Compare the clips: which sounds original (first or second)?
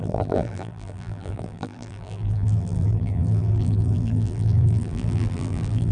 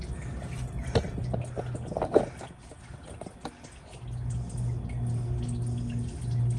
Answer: second